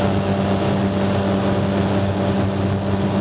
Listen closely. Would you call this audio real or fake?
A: real